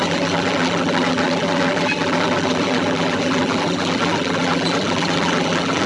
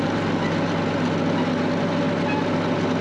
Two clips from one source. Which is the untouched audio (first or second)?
second